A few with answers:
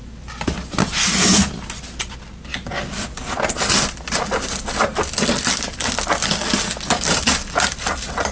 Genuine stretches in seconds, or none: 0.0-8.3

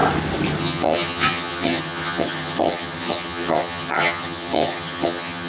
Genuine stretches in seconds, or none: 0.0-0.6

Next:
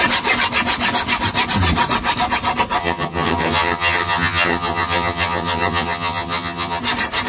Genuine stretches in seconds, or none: 0.0-2.8; 6.8-7.3